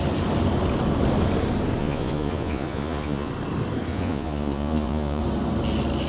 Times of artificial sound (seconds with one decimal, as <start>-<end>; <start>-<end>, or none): 1.8-3.3; 3.9-5.2